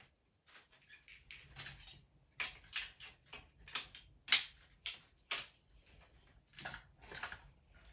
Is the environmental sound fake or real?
real